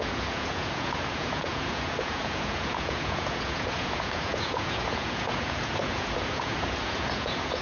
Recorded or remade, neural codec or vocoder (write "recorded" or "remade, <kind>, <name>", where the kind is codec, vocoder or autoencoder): remade, vocoder, Vocos